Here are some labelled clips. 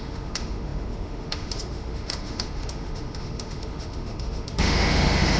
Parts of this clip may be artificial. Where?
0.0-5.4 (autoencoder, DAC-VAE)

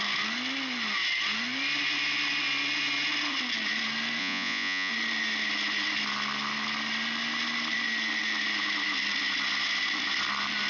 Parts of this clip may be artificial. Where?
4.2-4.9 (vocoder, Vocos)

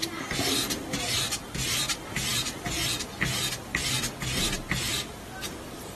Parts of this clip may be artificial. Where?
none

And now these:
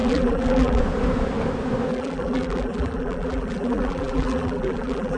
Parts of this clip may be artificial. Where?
0.0-0.8 (vocoder, BigVGAN v2); 1.9-5.2

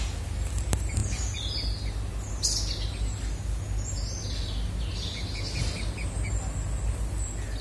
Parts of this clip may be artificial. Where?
none

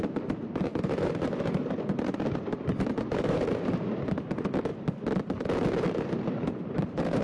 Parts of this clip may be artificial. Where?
0.0-4.7 (vocoder, BigVGAN v2); 6.0-7.2